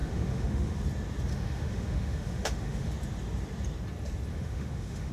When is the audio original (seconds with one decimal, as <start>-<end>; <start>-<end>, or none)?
0.8-1.3; 2.9-4.3